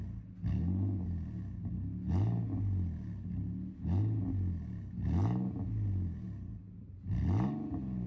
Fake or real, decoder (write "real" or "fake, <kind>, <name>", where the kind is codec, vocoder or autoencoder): real